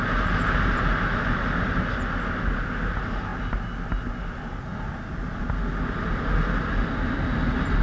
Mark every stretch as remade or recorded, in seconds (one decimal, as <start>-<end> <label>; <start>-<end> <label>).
0.0-7.8 recorded